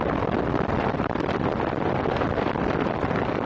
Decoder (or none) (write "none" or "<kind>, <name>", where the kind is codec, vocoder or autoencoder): none